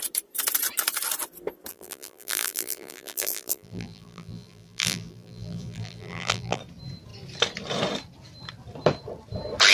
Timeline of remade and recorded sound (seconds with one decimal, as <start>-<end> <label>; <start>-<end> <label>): 0.0-1.7 recorded; 1.7-6.6 remade; 6.6-9.7 recorded